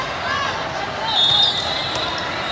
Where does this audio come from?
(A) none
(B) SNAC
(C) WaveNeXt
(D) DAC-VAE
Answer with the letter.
A